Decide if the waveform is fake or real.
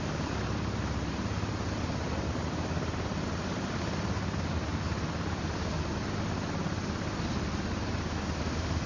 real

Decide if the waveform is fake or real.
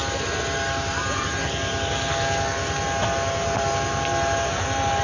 real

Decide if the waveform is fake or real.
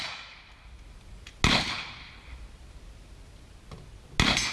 real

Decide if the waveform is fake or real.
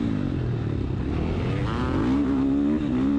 real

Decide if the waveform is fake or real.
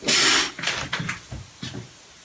real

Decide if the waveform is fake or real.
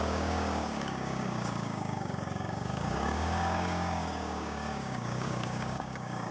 fake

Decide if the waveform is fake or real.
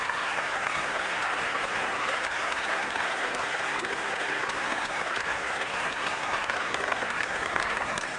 fake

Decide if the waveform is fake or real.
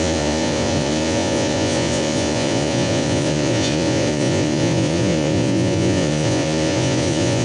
fake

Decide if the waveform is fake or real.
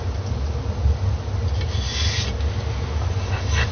real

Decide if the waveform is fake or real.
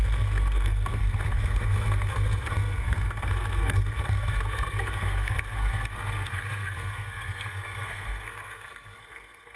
fake